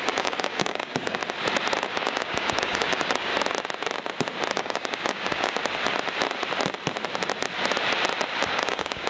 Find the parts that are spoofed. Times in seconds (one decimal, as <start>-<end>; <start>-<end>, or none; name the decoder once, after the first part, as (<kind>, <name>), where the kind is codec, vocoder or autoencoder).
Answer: 0.0-1.2 (codec, DAC); 1.9-3.3; 4.5-5.6; 8.5-9.1